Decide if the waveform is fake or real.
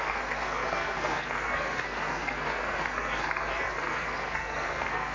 fake